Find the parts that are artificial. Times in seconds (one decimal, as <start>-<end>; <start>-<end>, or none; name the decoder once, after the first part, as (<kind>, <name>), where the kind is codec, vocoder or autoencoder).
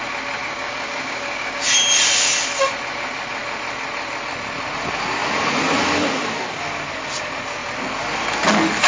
0.4-1.6 (codec, DAC)